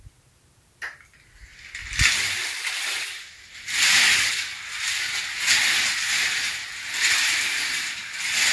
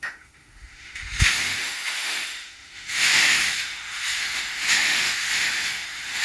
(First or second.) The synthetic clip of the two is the second